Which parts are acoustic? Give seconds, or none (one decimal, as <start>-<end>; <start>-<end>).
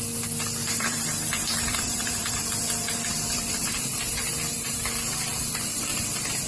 0.0-0.6; 3.5-6.5